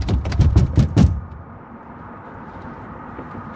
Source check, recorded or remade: remade